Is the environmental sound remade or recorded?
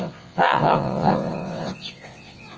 remade